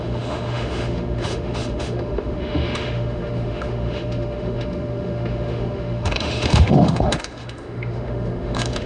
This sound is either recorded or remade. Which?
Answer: remade